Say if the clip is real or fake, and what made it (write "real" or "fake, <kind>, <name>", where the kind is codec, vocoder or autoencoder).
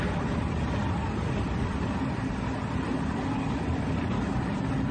real